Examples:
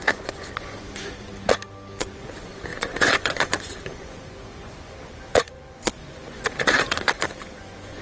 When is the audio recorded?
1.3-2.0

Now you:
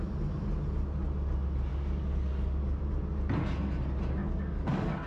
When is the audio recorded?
0.0-1.7; 2.8-4.2

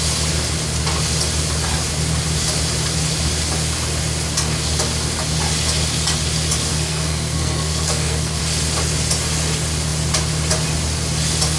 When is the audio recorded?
0.0-6.7; 8.4-11.6

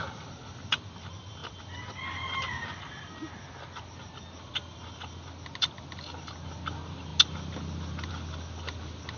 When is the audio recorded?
0.0-9.2

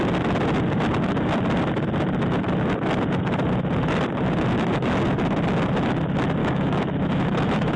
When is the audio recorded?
0.0-6.4

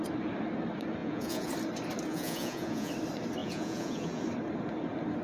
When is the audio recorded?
0.0-1.0; 1.5-2.1; 2.9-3.4; 4.2-5.2

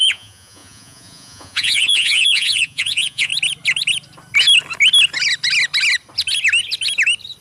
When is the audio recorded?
3.3-7.4